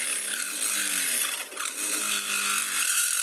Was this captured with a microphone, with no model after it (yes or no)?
yes